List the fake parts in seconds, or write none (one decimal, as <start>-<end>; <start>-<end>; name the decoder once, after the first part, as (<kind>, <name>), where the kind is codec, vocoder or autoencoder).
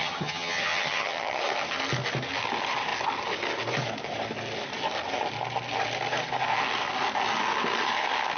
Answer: 0.0-1.4 (vocoder, HiFi-GAN)